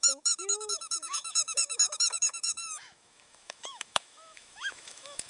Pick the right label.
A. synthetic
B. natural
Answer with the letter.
A